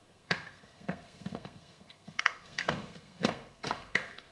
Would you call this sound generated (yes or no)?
yes